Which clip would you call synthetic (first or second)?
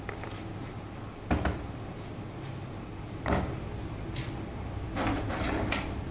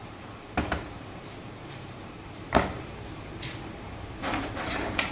second